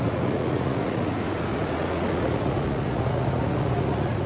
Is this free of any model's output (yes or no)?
no